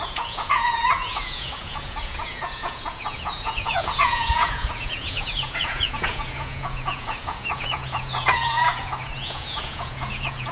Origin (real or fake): fake